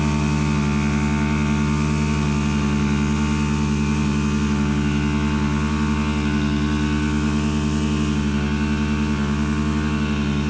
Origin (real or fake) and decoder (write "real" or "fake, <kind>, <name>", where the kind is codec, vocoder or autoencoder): real